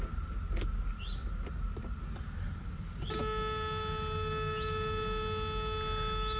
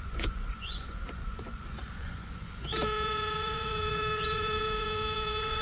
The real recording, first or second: first